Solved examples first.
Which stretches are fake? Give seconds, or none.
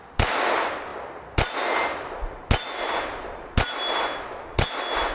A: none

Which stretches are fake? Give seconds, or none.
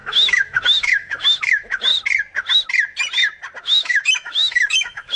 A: 0.0-1.9 (autoencoder, DAC-VAE); 3.6-5.2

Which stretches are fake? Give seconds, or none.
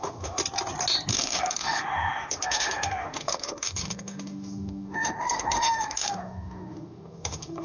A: 0.0-0.4 (autoencoder, DAC-VAE); 1.1-7.6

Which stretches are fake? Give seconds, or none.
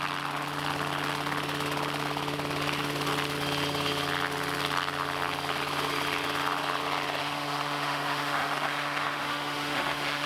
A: 7.2-10.3 (autoencoder, DAC-VAE)